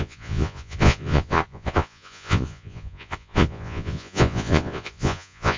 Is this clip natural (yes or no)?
no